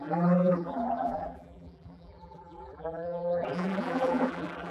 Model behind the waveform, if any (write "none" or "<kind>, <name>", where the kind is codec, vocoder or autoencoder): vocoder, BigVGAN v2